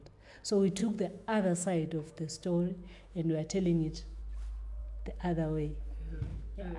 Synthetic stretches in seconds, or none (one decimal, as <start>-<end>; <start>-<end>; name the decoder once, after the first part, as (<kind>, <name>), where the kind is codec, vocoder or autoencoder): 0.8-4.2 (autoencoder, DAC-VAE); 4.8-5.8; 6.3-6.8